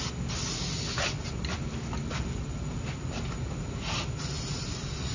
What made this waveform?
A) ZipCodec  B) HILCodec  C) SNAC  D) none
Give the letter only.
D